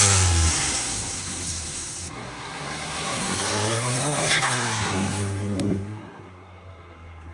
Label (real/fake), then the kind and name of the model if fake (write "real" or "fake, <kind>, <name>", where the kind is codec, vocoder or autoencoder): fake, codec, SNAC